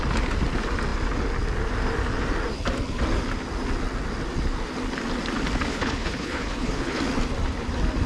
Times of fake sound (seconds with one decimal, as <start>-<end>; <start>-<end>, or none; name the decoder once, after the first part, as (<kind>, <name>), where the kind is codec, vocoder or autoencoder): 5.7-7.0 (codec, HILCodec)